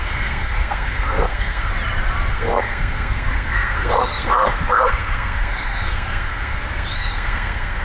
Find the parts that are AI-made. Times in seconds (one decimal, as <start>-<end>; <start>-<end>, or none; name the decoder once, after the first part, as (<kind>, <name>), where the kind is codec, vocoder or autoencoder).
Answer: 0.0-1.7 (codec, SNAC); 2.3-7.8